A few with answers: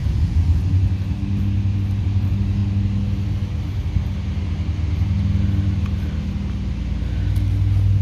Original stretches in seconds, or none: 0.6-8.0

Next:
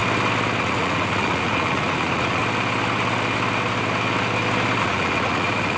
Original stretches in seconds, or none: 0.0-0.6; 2.4-4.8

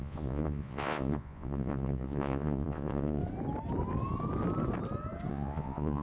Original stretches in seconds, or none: 3.2-5.3

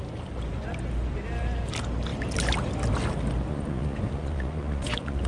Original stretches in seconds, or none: 0.0-3.5